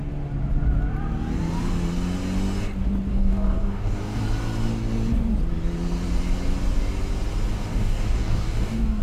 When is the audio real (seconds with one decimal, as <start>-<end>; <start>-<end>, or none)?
0.0-3.1; 4.2-7.5